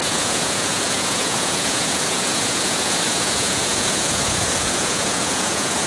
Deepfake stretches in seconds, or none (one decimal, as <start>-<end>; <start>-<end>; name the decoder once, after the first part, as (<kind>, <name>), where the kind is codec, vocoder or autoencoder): 0.0-5.9 (vocoder, Vocos)